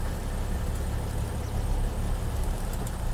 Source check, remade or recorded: recorded